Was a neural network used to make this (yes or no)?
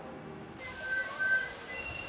no